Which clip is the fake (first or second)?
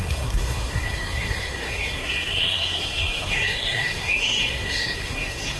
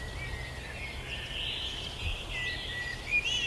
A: first